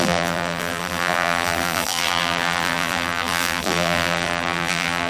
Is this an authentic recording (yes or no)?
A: no